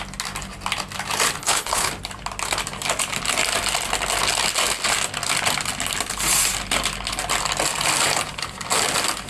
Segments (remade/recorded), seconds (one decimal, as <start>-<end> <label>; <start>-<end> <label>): 0.0-1.4 recorded; 1.4-1.9 remade; 1.9-9.3 recorded